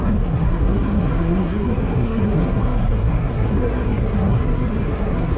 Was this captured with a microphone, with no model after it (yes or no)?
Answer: no